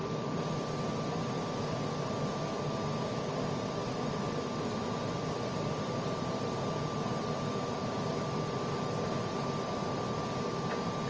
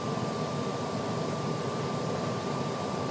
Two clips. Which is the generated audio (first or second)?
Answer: second